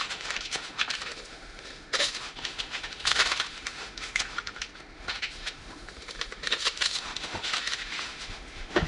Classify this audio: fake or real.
fake